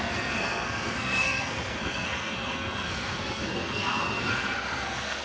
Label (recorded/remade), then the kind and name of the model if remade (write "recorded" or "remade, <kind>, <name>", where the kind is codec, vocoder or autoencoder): remade, codec, SNAC